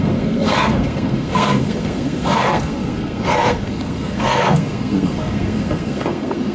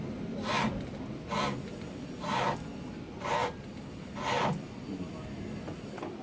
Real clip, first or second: second